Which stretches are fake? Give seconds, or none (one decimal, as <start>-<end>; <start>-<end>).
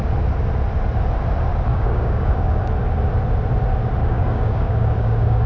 1.7-2.7; 4.0-5.5